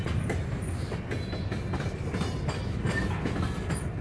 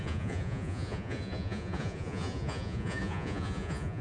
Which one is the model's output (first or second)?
second